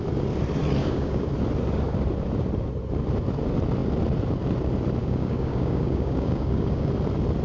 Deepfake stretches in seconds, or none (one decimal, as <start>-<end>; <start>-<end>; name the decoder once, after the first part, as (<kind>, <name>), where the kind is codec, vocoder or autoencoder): 0.8-1.3 (codec, DAC); 5.0-6.9